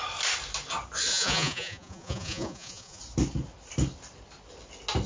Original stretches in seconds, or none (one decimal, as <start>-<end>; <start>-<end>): 0.0-1.1; 3.0-5.1